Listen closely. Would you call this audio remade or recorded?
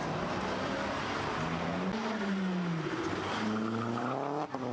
recorded